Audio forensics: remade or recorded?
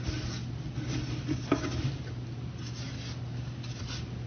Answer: recorded